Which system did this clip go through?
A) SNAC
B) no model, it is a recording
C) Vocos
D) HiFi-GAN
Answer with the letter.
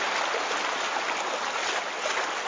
B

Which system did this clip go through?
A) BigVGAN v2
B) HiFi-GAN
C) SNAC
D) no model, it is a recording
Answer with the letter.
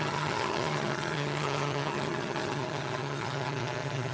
B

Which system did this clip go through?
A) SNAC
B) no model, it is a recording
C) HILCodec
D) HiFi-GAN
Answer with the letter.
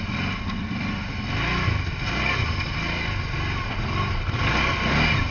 B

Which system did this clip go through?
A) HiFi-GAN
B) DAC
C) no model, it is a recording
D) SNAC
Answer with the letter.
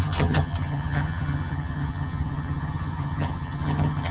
A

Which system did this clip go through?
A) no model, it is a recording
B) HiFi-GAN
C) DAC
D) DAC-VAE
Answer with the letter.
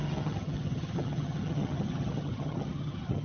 B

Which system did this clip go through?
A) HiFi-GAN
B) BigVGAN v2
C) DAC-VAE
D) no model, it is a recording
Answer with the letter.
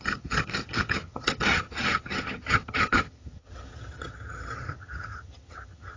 A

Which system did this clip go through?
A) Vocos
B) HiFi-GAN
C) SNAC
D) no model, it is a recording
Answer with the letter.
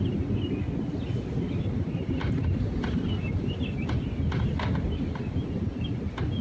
D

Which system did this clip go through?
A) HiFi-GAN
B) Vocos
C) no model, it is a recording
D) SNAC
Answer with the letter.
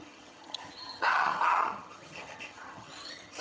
A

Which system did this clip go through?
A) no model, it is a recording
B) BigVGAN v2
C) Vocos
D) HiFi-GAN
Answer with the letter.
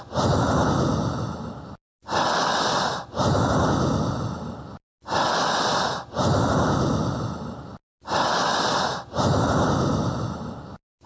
A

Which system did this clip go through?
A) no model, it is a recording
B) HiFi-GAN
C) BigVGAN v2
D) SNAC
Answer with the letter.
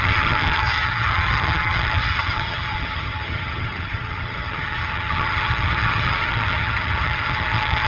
B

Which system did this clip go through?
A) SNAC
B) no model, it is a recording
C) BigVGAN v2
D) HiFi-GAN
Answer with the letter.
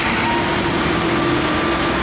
B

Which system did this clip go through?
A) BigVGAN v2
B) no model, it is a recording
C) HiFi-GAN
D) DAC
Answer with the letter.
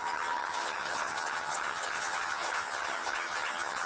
C